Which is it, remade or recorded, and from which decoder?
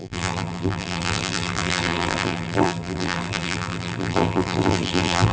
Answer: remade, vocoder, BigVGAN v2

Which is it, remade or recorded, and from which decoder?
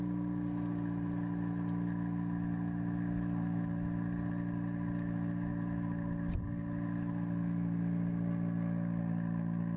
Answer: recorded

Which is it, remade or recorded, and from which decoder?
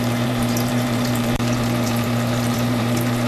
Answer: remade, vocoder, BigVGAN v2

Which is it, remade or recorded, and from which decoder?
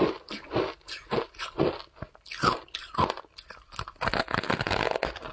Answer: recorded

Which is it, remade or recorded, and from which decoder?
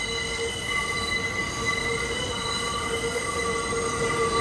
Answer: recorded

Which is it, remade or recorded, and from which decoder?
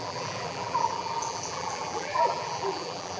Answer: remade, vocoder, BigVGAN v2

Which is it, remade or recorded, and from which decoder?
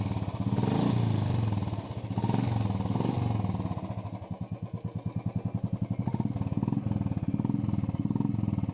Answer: recorded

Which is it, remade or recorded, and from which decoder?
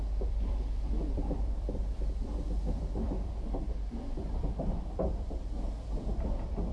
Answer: remade, vocoder, BigVGAN v2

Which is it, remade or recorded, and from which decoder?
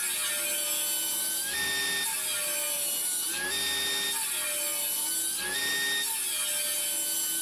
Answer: recorded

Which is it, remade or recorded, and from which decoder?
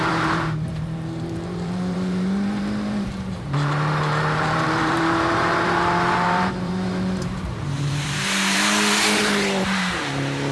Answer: remade, vocoder, BigVGAN v2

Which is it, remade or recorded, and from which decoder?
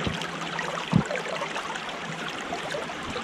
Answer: remade, vocoder, BigVGAN v2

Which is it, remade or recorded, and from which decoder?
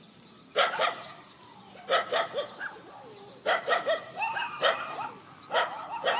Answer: recorded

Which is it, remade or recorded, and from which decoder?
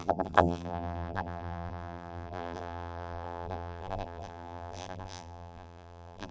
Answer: remade, vocoder, BigVGAN v2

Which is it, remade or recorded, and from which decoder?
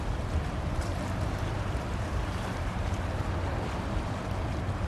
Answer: remade, vocoder, BigVGAN v2